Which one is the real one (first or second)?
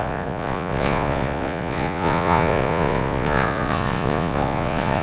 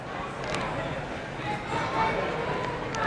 second